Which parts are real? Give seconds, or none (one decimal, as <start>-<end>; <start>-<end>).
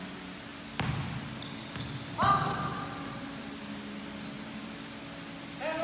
0.0-5.8